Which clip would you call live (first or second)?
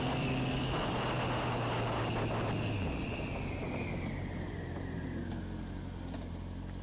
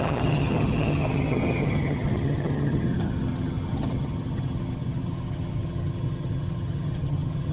first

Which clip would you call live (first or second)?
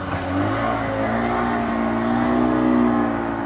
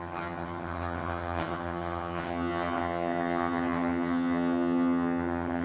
first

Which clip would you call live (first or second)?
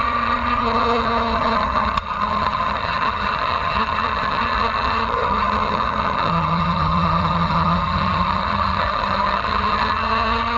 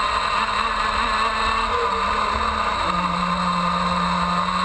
second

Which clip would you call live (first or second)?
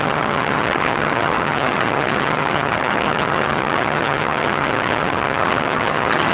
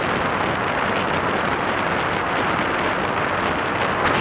second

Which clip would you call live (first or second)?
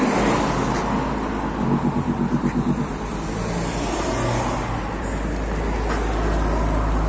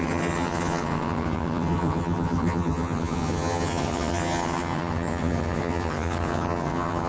first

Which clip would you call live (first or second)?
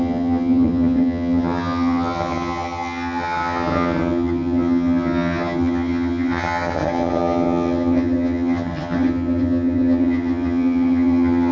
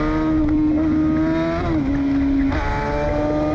second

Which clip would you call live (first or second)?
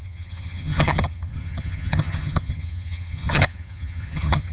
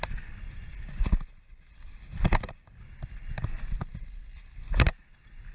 second